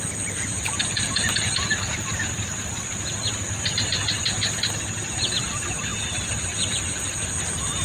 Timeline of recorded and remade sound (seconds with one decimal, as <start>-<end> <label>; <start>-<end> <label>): 0.0-7.8 recorded